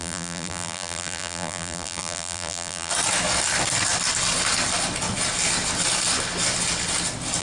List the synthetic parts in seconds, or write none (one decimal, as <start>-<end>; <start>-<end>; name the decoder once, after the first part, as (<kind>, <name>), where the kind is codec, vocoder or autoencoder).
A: 0.0-2.9 (vocoder, BigVGAN v2)